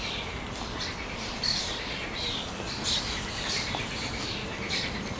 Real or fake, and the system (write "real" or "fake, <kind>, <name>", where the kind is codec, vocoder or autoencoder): real